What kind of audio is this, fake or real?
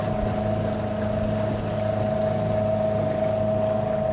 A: real